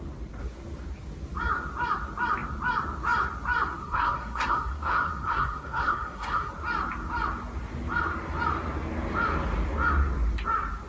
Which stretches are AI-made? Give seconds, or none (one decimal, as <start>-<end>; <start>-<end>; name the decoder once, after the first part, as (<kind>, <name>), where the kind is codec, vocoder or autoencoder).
3.8-6.5 (codec, SNAC)